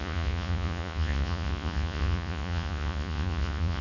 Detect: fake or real fake